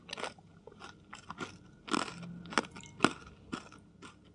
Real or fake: real